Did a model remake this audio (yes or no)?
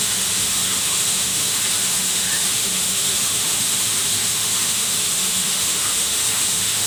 yes